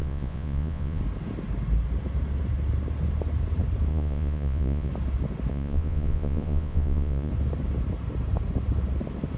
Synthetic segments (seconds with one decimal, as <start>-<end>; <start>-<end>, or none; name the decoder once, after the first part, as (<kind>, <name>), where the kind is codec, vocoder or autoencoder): 0.0-1.0 (vocoder, Vocos); 3.9-4.9; 5.5-7.3